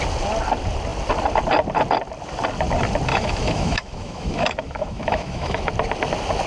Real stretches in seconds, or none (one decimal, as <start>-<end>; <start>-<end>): 0.0-3.1; 5.7-6.5